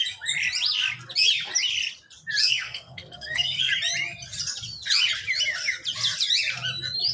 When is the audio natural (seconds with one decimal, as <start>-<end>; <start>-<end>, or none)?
0.0-2.4; 3.7-7.1